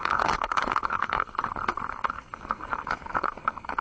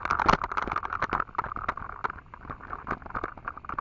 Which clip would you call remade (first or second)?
first